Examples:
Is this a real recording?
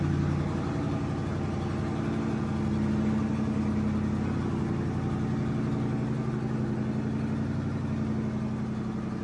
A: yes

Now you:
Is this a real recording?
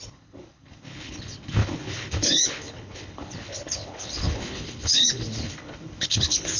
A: no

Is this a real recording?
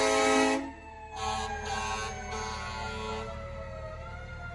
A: yes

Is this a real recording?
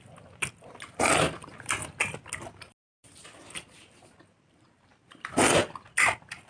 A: yes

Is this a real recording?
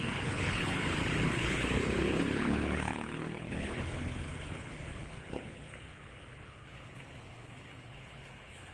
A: no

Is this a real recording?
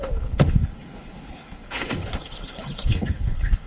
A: no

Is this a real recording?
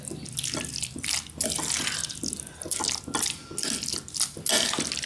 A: yes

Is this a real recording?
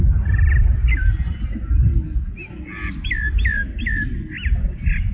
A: yes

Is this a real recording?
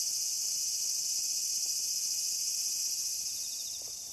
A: yes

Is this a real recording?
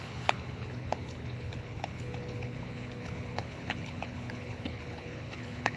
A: no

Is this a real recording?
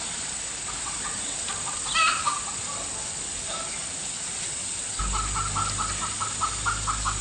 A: yes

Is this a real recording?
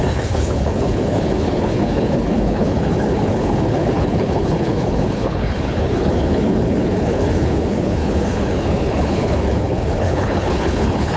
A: no